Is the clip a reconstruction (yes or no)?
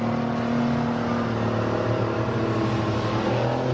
no